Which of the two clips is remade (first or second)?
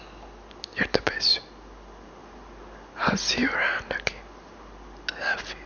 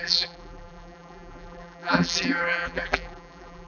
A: second